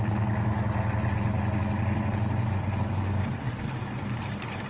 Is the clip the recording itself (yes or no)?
yes